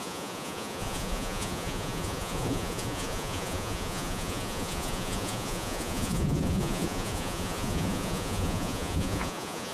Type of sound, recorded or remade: remade